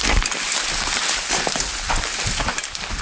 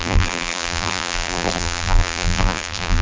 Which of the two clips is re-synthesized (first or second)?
second